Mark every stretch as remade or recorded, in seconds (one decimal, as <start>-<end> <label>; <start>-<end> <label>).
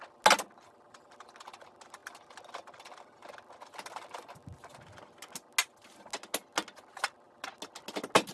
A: 0.0-8.3 recorded